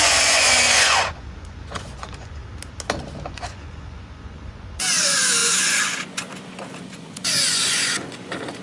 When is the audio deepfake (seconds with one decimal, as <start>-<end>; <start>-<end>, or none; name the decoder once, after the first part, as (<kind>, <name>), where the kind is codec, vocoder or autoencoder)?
0.0-2.4 (vocoder, Vocos); 3.3-8.6

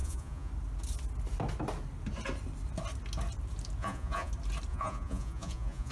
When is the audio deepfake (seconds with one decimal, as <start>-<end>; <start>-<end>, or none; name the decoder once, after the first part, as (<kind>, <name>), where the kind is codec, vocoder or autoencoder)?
0.0-0.5 (vocoder, Vocos); 3.8-4.3; 4.7-5.9

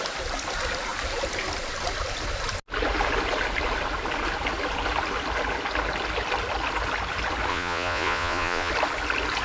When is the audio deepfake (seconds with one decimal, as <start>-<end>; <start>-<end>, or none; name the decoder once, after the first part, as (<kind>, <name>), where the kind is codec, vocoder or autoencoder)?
7.5-8.7 (vocoder, Vocos)

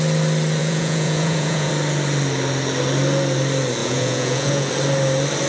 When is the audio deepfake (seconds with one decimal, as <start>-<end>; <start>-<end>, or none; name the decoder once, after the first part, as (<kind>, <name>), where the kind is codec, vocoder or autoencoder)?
0.6-1.7 (vocoder, Vocos); 3.8-4.7